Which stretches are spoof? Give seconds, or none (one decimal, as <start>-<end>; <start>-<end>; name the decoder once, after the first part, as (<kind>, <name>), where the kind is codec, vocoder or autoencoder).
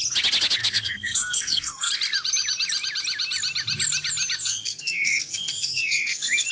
0.6-1.9 (codec, SNAC); 4.4-6.5